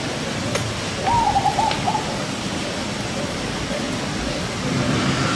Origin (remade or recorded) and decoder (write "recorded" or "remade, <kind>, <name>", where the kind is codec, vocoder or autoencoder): remade, vocoder, BigVGAN v2